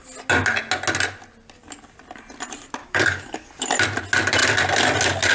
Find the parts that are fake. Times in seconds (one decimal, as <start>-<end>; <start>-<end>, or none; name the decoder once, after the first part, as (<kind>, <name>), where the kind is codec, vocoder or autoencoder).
2.8-3.5 (codec, DAC)

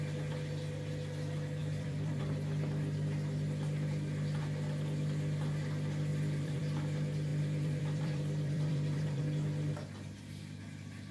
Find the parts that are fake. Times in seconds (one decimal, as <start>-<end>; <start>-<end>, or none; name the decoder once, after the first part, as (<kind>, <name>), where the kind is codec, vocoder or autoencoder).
1.6-2.2 (vocoder, BigVGAN v2); 6.1-6.6; 7.3-9.2

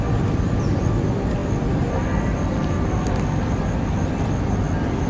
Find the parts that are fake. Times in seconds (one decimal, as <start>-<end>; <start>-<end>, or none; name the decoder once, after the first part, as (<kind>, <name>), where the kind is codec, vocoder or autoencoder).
none

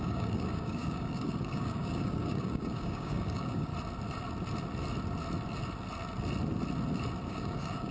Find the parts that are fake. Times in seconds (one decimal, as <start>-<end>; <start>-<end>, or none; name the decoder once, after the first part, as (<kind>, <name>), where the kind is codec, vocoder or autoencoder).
0.0-3.7 (codec, DAC); 7.3-7.9

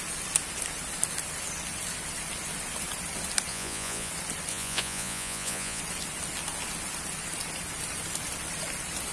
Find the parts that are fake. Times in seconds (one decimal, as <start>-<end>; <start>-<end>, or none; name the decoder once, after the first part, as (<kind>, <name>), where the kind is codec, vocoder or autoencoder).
3.5-4.1 (vocoder, Vocos); 4.5-5.8

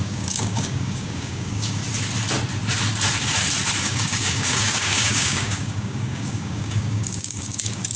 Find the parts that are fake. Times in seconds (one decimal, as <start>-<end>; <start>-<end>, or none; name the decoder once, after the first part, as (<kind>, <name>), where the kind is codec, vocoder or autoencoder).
0.0-1.8 (codec, DAC); 3.8-8.0

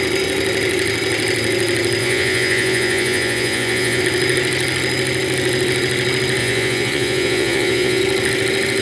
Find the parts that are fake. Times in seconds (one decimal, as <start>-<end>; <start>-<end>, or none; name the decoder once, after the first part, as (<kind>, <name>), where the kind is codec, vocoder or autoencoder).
2.0-4.0 (vocoder, Vocos); 6.4-8.0

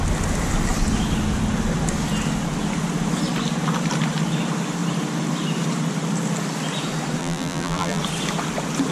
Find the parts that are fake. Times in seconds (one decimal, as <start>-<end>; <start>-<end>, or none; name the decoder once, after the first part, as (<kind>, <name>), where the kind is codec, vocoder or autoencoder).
7.2-8.0 (vocoder, BigVGAN v2)